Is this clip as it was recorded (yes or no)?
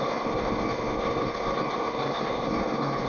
no